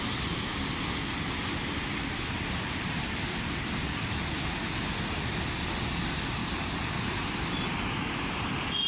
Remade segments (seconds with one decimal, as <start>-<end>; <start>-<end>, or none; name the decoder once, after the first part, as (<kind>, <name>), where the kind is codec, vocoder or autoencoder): none